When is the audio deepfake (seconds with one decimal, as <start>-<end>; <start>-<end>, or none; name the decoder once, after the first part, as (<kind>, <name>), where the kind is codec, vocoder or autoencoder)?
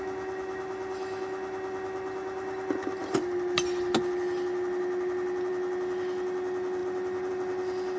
none